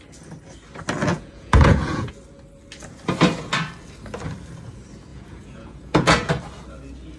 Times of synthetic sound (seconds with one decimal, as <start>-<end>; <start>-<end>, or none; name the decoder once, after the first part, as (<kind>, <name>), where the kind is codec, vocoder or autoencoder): 1.1-2.1 (vocoder, Vocos); 5.1-6.3